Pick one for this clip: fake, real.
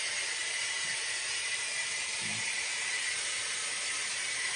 fake